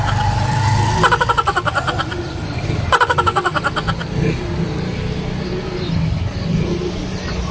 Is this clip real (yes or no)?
yes